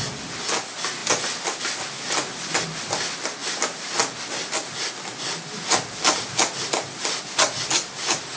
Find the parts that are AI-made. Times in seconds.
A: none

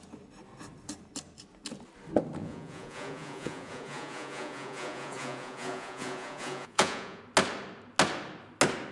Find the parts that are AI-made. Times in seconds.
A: 2.4-7.2 (vocoder, Vocos)

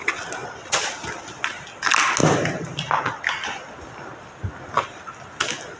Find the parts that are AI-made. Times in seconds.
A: none

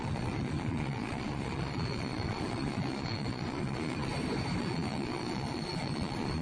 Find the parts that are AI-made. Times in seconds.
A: 0.0-4.1 (vocoder, Vocos); 4.6-6.4

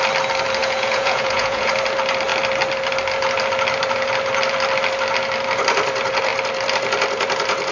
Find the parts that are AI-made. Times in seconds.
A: 0.6-1.7 (vocoder, Vocos)

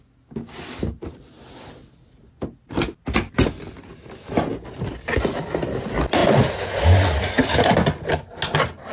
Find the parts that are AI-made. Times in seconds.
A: none